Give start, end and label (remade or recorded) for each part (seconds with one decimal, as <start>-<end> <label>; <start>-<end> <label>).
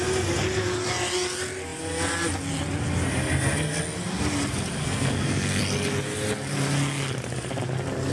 0.0-4.8 recorded; 4.8-5.6 remade; 5.6-8.1 recorded